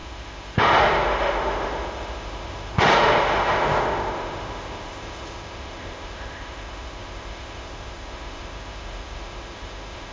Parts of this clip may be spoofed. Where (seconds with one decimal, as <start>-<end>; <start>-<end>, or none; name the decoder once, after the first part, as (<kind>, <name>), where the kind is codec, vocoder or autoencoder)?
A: 0.0-10.1 (autoencoder, DAC-VAE)